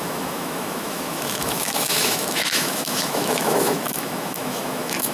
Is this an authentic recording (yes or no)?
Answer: no